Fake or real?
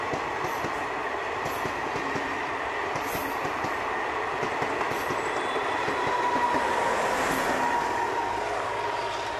real